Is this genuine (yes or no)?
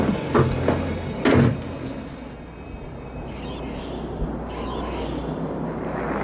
yes